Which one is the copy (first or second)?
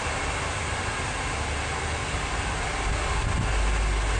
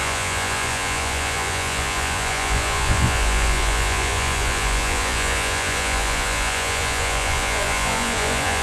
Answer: second